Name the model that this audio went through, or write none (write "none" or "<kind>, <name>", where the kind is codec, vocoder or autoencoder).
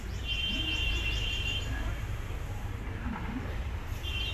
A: vocoder, BigVGAN v2